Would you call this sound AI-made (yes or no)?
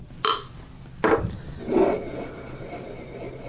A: no